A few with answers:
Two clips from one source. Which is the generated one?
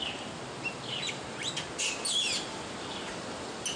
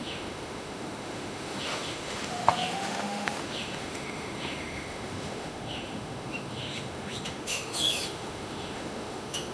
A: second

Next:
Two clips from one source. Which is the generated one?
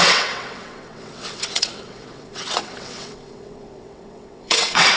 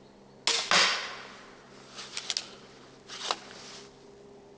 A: first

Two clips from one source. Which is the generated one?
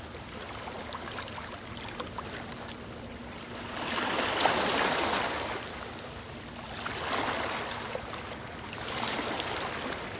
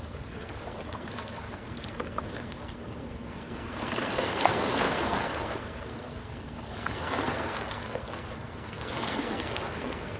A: second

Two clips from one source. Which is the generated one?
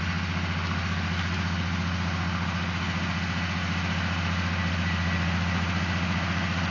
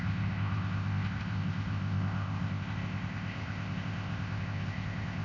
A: second